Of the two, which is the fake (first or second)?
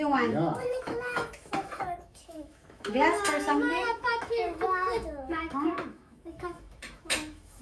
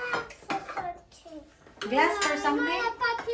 first